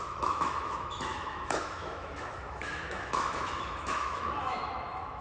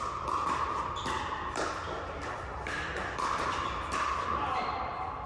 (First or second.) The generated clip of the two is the first